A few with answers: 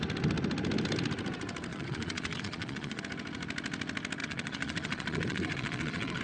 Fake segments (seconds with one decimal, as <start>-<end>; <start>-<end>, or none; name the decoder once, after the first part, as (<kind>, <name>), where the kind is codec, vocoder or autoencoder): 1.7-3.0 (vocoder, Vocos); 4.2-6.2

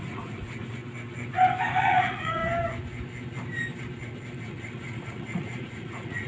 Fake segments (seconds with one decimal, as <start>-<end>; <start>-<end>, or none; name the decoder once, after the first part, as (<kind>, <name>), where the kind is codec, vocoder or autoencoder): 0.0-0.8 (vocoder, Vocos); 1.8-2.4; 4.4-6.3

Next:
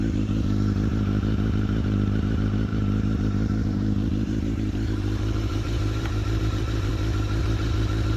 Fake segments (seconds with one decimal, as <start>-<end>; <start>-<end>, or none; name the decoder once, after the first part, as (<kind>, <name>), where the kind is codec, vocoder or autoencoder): 0.0-6.9 (vocoder, BigVGAN v2); 7.4-8.2